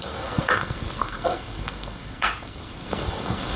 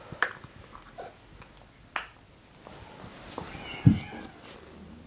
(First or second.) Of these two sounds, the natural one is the second